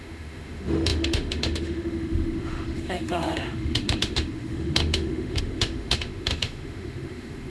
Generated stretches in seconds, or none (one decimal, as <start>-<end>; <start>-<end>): 0.0-7.5